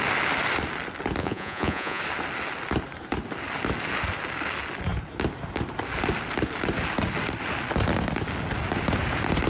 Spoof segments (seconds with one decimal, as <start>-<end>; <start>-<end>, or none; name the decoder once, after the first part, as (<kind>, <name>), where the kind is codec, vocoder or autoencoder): 1.2-2.0 (vocoder, Vocos)